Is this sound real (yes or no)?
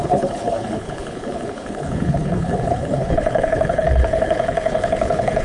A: no